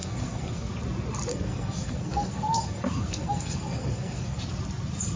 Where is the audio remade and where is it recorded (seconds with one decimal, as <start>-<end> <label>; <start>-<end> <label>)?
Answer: 0.0-0.7 remade; 0.7-1.3 recorded; 1.3-4.4 remade; 4.4-5.2 recorded